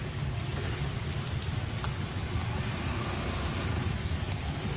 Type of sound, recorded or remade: recorded